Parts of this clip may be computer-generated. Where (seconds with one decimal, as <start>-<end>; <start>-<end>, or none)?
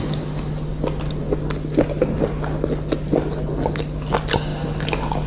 none